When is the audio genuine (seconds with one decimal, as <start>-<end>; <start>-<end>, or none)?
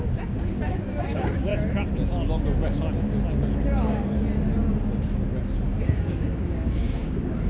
1.5-5.8